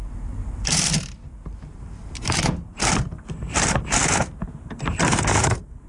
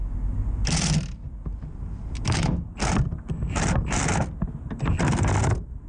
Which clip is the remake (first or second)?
first